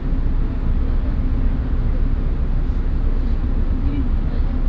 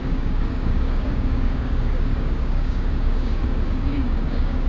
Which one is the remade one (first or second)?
second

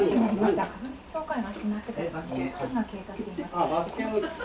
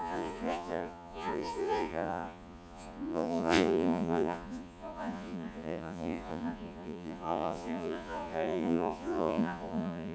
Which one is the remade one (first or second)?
second